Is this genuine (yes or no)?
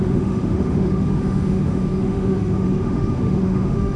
no